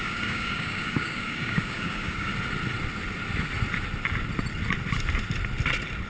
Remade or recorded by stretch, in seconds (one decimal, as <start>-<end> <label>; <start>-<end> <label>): 0.0-2.3 remade; 2.3-6.1 recorded